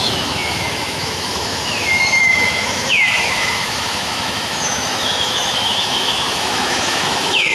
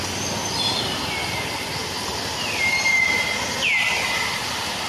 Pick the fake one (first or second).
first